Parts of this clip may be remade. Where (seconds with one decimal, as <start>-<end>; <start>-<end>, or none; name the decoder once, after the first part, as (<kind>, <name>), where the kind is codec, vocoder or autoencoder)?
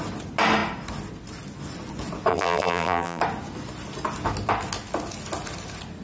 2.3-3.2 (vocoder, BigVGAN v2)